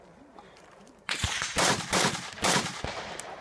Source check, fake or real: fake